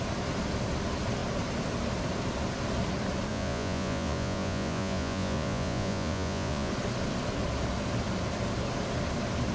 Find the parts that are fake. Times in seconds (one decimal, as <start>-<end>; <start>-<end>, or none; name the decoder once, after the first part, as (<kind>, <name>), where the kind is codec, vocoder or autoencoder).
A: 3.3-6.7 (vocoder, Vocos)